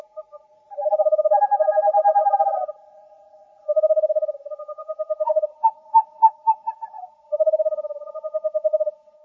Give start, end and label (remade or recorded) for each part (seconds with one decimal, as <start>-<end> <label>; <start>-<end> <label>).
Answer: 0.0-9.2 recorded